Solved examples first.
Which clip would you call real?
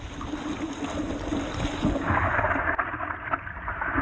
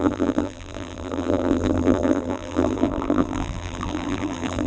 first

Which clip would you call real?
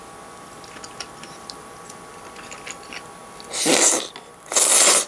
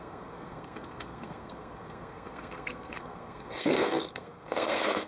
first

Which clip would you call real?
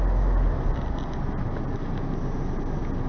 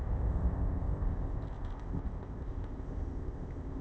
first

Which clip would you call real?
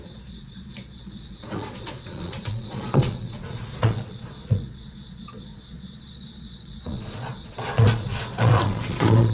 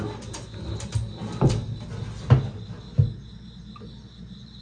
second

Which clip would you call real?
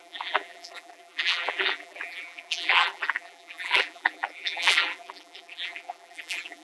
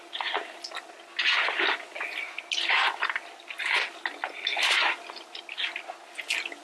second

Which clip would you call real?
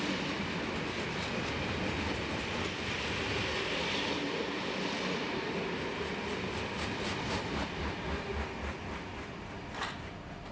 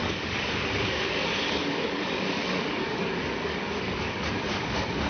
first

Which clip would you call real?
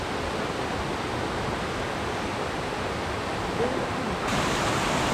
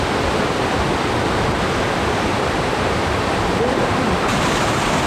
first